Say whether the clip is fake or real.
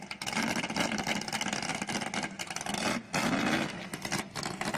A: real